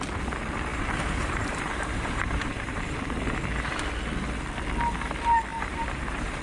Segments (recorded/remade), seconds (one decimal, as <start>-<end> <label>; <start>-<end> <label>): 0.0-0.7 recorded; 0.7-3.0 remade; 3.0-5.5 recorded; 5.5-6.4 remade